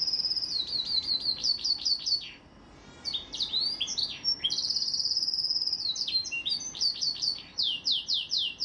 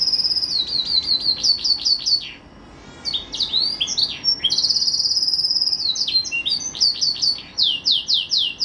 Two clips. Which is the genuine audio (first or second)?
second